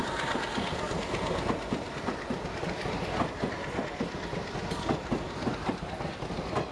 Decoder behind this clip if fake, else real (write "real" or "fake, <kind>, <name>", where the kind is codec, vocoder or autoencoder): real